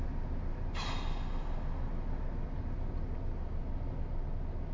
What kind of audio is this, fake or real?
real